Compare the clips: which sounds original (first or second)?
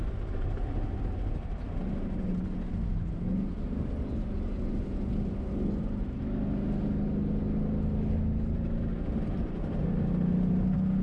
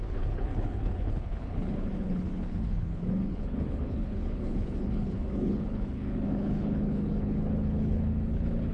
first